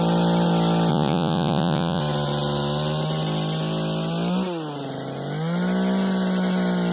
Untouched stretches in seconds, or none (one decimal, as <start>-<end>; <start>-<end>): 0.0-0.9; 2.0-6.9

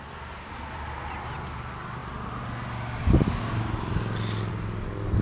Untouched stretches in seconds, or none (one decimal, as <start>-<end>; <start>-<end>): 0.0-5.2

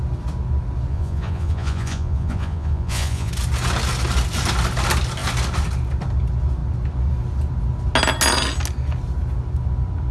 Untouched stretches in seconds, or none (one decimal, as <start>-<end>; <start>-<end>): 0.0-0.9; 3.3-10.1